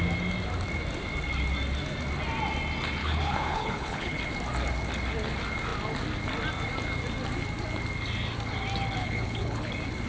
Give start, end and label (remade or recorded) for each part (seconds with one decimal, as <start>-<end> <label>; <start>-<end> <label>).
0.0-3.0 recorded; 3.0-4.2 remade; 4.2-9.0 recorded; 9.0-9.7 remade; 9.7-10.1 recorded